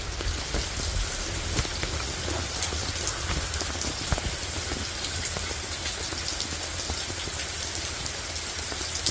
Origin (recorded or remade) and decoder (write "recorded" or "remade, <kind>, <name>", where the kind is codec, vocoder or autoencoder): recorded